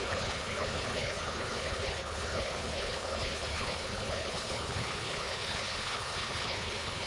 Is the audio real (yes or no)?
no